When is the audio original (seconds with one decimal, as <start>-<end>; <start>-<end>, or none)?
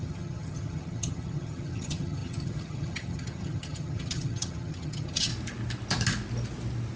5.3-7.0